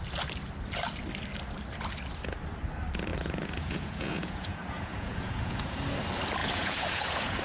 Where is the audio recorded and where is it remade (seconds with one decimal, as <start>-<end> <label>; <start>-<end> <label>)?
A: 0.0-3.1 recorded; 3.1-5.8 remade; 5.8-6.4 recorded; 6.4-7.4 remade